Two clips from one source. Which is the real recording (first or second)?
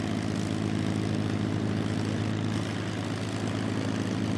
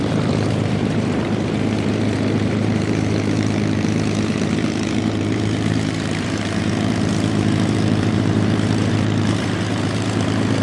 first